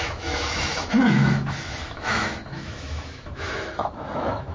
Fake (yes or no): yes